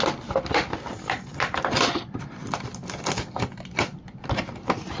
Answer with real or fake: real